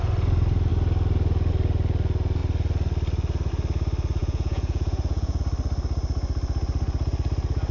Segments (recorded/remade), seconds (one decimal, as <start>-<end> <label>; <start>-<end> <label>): 0.0-4.2 recorded; 4.2-5.4 remade; 5.4-7.7 recorded